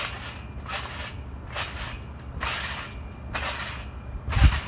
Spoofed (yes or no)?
no